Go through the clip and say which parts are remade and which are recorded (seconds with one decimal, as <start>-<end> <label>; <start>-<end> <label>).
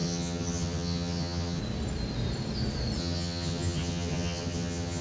0.0-1.6 remade; 1.6-3.0 recorded; 3.0-5.0 remade